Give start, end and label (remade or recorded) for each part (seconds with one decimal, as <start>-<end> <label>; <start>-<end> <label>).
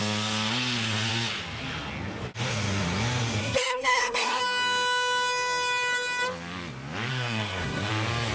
0.0-3.4 recorded; 3.4-4.4 remade; 4.4-7.1 recorded; 7.1-7.9 remade; 7.9-8.3 recorded